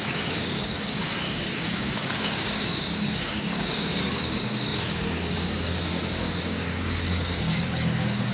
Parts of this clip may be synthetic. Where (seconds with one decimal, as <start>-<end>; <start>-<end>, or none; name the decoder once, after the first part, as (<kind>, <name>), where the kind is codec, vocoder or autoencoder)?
0.0-8.3 (codec, DAC)